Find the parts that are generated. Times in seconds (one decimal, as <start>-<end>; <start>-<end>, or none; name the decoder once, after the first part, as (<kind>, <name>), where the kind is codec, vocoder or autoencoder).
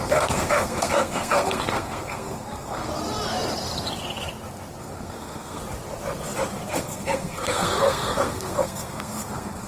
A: 0.0-2.9 (codec, SNAC); 4.8-5.6; 6.7-9.7